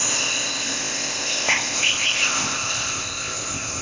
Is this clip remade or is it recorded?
remade